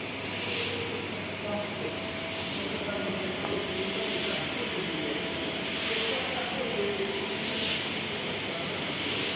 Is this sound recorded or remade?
recorded